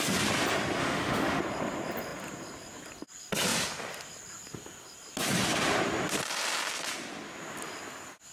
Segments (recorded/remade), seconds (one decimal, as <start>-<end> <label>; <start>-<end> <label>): 0.0-0.8 recorded; 0.8-1.4 remade; 1.4-8.3 recorded